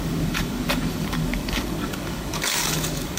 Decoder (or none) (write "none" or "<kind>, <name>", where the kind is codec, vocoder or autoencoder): codec, DAC